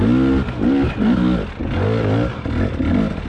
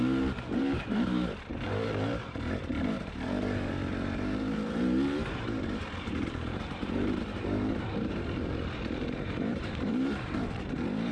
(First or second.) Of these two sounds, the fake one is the second